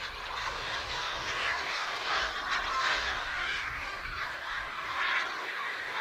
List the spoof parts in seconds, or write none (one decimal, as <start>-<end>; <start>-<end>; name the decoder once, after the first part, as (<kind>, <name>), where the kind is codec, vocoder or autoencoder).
0.4-2.3 (codec, DAC); 2.7-5.0; 5.4-6.0